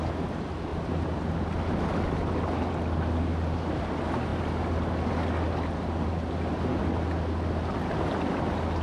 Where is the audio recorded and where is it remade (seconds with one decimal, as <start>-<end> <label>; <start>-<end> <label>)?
0.0-8.8 recorded